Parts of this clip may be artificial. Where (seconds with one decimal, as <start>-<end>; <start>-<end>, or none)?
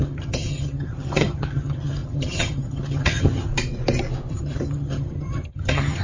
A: 0.0-3.5; 4.3-6.0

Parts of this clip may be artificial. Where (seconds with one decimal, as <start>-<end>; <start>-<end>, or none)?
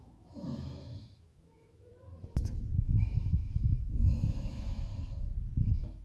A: 0.0-1.9; 2.8-4.9; 5.6-6.0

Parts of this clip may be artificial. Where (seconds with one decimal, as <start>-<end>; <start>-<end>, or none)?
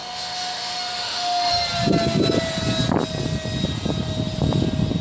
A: 0.0-1.5